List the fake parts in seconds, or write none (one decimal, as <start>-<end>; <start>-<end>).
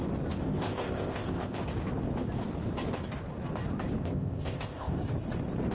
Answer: 0.4-1.6; 4.0-5.0